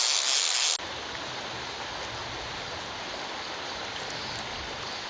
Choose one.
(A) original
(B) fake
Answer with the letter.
A